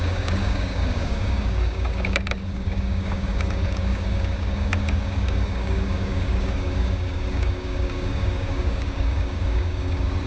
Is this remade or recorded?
remade